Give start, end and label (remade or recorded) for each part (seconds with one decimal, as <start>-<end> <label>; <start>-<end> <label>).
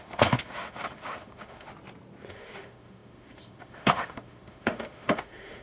0.0-1.7 remade; 1.7-2.3 recorded; 2.3-5.6 remade